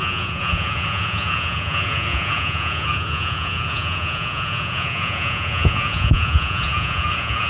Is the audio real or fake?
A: fake